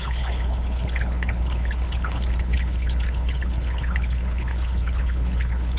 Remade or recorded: remade